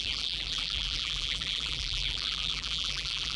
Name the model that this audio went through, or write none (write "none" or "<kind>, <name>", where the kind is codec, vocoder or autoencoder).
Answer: vocoder, BigVGAN v2